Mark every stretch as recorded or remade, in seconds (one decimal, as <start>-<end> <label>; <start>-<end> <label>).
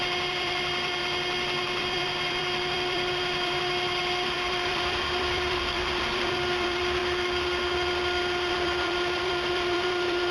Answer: 0.0-1.0 remade; 1.0-1.8 recorded; 1.8-7.0 remade; 7.0-8.5 recorded; 8.5-10.3 remade